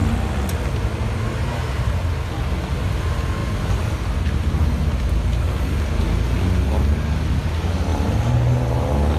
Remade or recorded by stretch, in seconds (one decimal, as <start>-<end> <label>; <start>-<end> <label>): 0.0-9.2 recorded